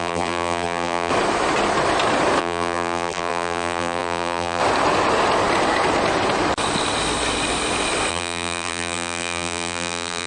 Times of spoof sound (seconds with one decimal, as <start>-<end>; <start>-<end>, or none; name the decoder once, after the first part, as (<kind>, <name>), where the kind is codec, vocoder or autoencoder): 0.0-1.1 (vocoder, BigVGAN v2); 2.4-4.6; 8.1-10.3